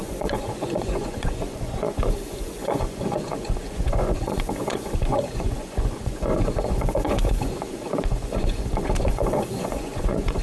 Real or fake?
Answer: fake